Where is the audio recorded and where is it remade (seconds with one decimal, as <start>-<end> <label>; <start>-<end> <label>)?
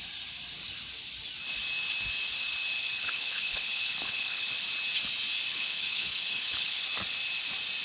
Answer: 0.0-2.8 recorded; 2.8-4.5 remade; 4.5-5.5 recorded; 5.5-6.8 remade; 6.8-7.8 recorded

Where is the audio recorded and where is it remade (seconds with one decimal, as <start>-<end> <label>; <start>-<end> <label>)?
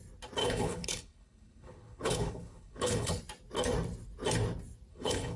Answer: 0.0-0.4 recorded; 0.4-3.2 remade; 3.2-4.9 recorded; 4.9-5.4 remade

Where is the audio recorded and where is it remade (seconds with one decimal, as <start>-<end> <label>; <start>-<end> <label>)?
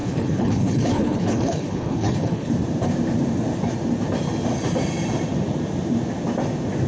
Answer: 0.0-2.5 remade; 2.5-6.9 recorded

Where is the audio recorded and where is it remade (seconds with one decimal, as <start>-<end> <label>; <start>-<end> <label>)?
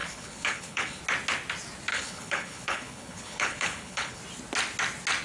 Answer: 0.0-1.0 remade; 1.0-1.9 recorded; 1.9-4.2 remade; 4.2-5.2 recorded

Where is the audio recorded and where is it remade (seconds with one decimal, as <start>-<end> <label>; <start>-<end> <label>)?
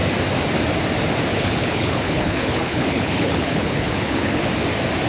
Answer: 0.0-1.3 recorded; 1.3-4.4 remade; 4.4-5.1 recorded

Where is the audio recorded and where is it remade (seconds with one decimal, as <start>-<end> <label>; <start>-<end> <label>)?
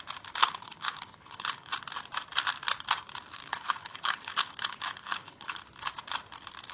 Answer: 0.0-0.4 recorded; 0.4-1.8 remade; 1.8-3.4 recorded; 3.4-5.6 remade; 5.6-6.7 recorded